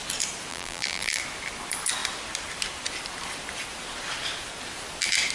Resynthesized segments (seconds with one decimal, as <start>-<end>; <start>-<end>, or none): 0.5-1.2